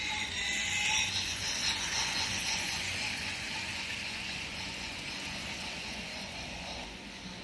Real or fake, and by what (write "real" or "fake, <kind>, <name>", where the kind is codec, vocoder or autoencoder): fake, vocoder, Vocos